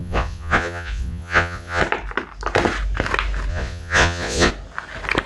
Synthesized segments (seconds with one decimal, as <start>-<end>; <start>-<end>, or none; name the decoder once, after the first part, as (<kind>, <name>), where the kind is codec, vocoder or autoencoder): 0.0-1.8 (vocoder, Vocos); 3.5-4.5